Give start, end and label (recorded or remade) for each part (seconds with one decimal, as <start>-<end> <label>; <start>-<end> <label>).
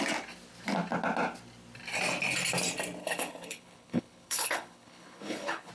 0.0-3.0 recorded; 3.0-5.7 remade